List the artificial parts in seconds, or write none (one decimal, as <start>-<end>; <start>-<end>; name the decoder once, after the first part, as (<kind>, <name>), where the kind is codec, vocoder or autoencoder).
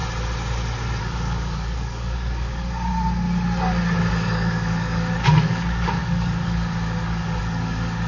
1.0-2.9 (codec, DAC); 4.1-8.1